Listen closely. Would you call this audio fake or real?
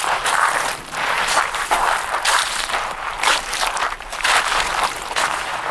fake